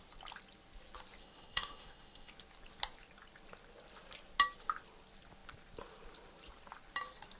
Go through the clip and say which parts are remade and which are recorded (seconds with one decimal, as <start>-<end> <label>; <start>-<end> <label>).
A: 0.0-1.2 recorded; 1.2-2.3 remade; 2.3-7.4 recorded